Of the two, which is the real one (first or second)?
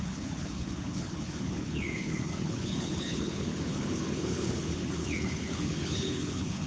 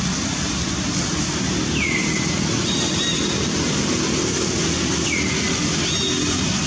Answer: second